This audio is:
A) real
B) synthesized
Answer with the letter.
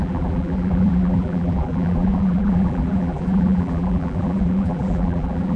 B